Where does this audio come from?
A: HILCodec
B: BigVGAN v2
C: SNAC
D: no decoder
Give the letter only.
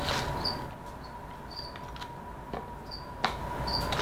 D